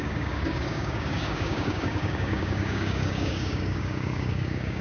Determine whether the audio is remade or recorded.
remade